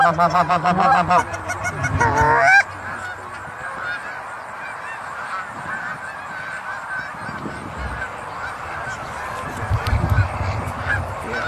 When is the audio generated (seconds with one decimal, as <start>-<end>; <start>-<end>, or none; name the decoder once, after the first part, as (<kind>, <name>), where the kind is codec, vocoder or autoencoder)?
none

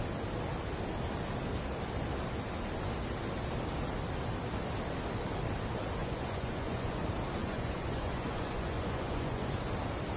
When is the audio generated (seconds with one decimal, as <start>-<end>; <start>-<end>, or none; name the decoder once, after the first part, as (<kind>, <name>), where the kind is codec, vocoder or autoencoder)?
6.0-7.0 (vocoder, Vocos); 7.4-9.5